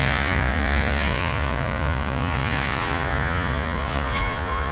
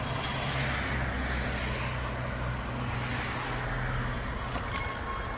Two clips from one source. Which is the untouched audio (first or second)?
second